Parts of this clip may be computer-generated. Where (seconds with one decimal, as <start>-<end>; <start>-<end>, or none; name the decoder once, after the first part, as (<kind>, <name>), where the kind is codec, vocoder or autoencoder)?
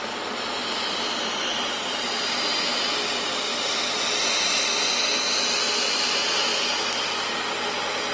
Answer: none